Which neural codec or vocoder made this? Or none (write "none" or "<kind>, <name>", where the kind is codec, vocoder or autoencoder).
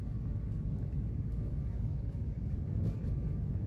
codec, DAC